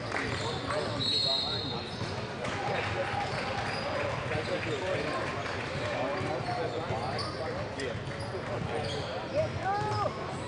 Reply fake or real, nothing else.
real